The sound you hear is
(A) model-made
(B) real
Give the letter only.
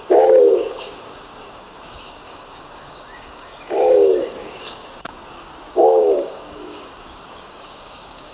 A